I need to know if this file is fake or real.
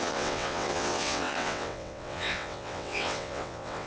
fake